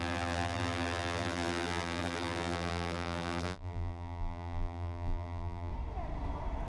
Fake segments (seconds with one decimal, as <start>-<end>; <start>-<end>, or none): 0.0-5.7